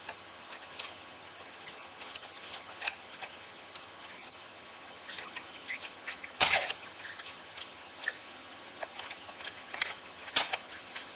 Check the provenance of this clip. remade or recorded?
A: remade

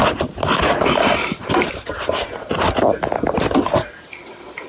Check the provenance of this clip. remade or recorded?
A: recorded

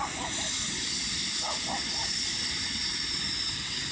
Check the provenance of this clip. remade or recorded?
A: recorded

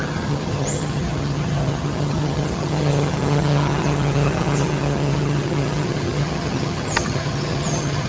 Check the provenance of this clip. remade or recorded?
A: remade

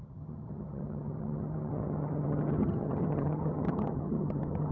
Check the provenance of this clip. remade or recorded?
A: remade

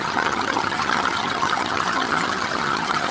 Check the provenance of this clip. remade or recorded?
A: remade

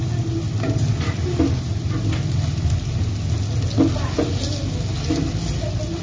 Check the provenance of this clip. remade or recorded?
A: recorded